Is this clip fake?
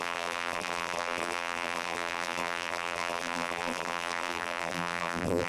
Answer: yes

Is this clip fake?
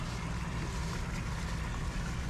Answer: no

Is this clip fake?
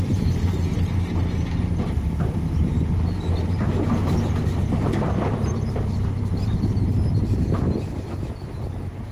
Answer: yes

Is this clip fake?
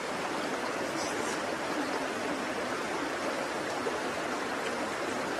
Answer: no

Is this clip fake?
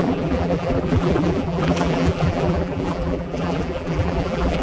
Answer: yes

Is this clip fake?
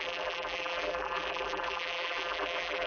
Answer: yes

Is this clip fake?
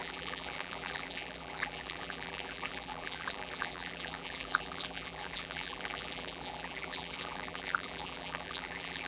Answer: yes